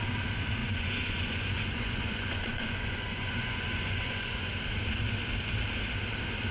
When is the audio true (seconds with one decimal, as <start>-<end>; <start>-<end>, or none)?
0.0-0.6; 4.5-6.5